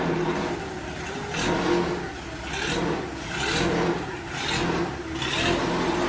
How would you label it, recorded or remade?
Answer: recorded